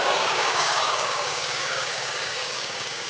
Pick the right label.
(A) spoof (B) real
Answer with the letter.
A